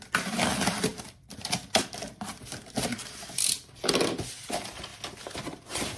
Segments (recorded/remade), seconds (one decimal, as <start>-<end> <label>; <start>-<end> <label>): 0.0-6.0 recorded